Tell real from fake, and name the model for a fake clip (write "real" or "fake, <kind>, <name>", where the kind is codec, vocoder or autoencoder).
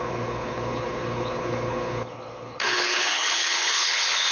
fake, codec, HILCodec